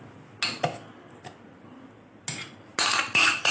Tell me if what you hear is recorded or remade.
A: recorded